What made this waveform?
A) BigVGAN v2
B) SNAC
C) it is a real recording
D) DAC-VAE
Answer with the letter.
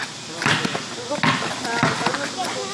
C